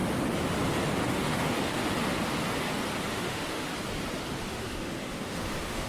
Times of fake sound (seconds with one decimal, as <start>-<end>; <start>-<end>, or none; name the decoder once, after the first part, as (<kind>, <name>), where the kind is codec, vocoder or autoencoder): 1.1-1.8 (autoencoder, DAC-VAE); 3.1-3.7; 4.4-5.9